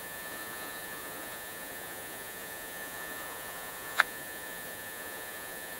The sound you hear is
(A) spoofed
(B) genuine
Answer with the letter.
A